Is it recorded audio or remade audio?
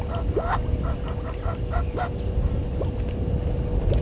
recorded